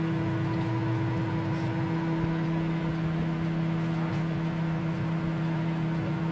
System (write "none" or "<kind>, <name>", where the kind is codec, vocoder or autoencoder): none